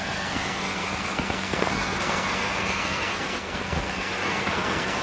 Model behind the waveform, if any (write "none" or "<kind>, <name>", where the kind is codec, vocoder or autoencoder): codec, SNAC